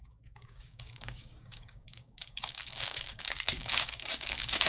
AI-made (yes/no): yes